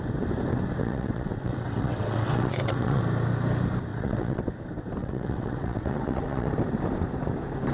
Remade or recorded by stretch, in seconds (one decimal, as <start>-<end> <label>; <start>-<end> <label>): 0.0-0.8 recorded; 0.8-3.0 remade; 3.0-3.9 recorded; 3.9-4.4 remade; 4.4-5.0 recorded; 5.0-6.5 remade; 6.5-7.7 recorded